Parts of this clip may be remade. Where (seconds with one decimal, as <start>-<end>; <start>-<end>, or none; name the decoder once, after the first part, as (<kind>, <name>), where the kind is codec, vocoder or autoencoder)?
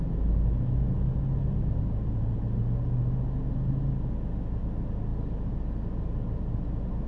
none